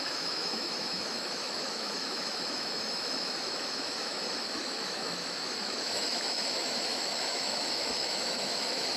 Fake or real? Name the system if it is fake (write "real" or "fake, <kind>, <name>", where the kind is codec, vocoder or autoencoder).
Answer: fake, autoencoder, DAC-VAE